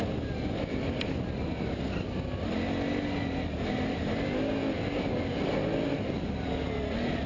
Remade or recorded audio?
recorded